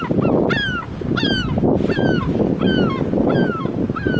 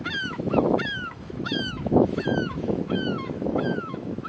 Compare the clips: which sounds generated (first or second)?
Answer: second